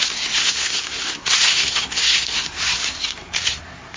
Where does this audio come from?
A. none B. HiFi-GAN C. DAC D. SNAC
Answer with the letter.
D